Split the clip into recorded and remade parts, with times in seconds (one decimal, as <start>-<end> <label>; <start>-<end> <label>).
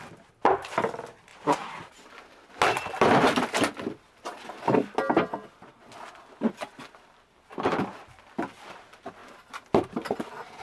0.0-1.3 recorded; 1.3-2.0 remade; 2.0-10.6 recorded